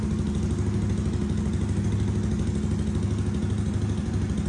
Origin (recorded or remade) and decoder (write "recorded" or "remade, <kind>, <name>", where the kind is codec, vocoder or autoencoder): recorded